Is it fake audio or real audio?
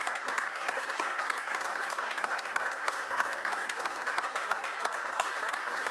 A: fake